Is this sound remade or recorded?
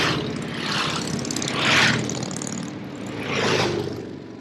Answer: recorded